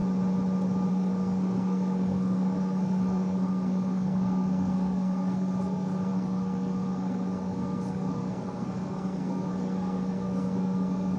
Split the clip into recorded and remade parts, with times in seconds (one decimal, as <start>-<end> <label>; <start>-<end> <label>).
0.0-0.9 recorded; 0.9-11.2 remade

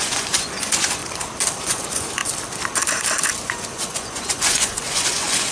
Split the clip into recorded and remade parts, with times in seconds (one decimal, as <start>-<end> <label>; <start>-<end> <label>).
0.0-1.0 remade; 1.0-1.6 recorded; 1.6-2.2 remade; 2.2-3.4 recorded; 3.4-5.5 remade